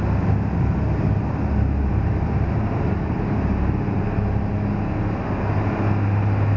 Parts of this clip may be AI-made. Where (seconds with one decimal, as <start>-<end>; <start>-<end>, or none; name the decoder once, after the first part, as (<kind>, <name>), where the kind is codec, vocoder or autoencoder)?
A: 1.9-4.0 (vocoder, BigVGAN v2)